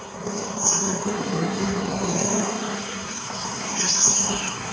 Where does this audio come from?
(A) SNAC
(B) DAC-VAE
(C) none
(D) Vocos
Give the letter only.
A